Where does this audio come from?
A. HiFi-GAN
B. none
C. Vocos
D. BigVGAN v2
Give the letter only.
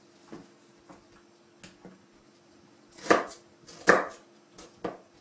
B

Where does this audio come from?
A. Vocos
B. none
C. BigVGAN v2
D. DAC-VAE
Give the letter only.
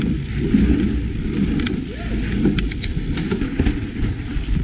B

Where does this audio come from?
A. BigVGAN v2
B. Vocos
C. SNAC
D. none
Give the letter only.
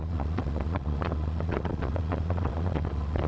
B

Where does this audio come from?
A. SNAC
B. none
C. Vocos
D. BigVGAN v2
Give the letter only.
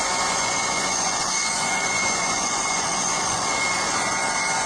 C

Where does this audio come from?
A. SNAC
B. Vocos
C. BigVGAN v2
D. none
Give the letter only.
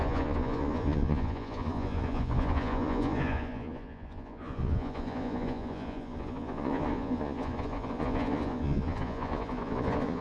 B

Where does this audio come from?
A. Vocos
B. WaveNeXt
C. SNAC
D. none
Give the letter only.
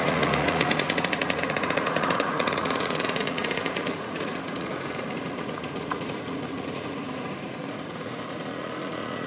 A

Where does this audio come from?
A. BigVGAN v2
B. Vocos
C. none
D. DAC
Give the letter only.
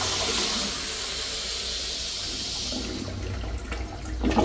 C